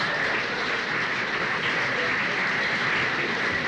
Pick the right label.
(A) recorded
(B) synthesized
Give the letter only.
A